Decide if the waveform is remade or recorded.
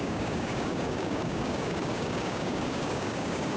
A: remade